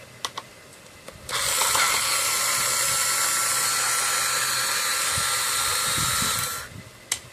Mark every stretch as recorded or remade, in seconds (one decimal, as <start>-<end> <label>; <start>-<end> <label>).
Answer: 0.0-7.3 recorded